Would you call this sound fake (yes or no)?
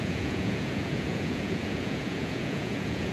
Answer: yes